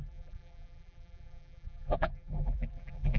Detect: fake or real fake